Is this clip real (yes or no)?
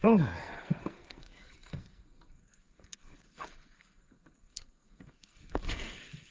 no